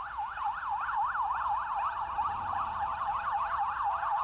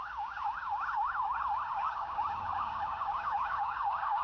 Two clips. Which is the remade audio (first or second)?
second